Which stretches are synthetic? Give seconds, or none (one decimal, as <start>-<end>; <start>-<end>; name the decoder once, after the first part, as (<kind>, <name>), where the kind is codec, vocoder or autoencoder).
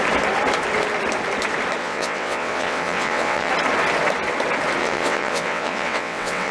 1.8-3.5 (vocoder, WaveNeXt); 4.8-6.5